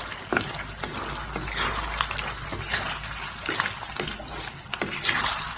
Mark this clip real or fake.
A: real